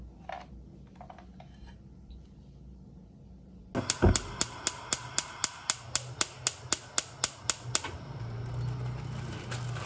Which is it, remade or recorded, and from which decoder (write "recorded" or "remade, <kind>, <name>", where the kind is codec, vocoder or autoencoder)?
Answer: recorded